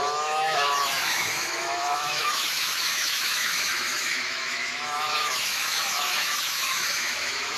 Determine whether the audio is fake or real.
fake